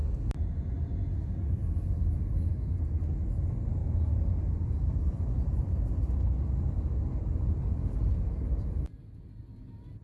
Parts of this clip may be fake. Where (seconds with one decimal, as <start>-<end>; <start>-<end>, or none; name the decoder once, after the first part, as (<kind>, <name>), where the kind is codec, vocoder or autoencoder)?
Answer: 3.8-8.0 (vocoder, BigVGAN v2)